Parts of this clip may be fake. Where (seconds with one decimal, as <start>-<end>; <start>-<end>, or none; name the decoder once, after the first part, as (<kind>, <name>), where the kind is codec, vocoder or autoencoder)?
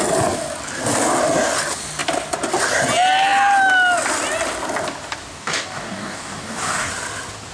5.3-6.9 (codec, DAC)